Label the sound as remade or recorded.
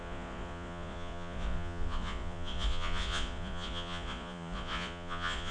remade